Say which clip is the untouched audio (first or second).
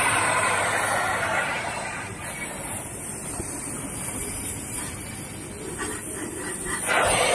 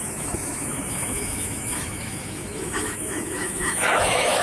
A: first